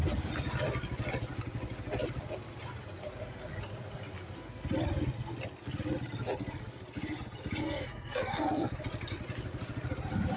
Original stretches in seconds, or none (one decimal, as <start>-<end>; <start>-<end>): 0.0-7.6; 8.8-10.4